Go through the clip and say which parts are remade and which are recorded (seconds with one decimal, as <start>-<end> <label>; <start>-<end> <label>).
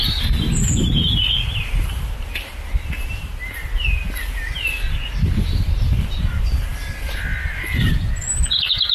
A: 0.0-8.9 recorded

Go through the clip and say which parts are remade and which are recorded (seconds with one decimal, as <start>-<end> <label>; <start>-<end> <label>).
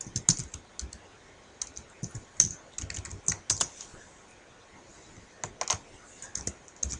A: 0.0-7.0 recorded